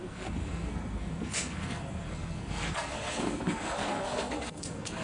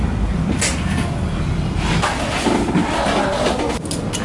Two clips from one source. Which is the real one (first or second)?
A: second